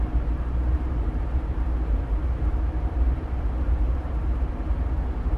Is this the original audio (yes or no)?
no